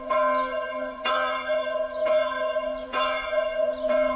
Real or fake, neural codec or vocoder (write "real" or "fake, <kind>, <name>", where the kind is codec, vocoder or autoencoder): fake, vocoder, Vocos